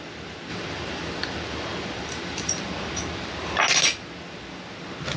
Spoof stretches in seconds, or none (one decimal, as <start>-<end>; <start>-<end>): 0.5-3.6